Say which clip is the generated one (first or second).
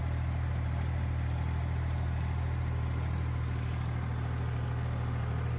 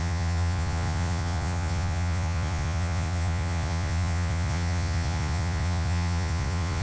second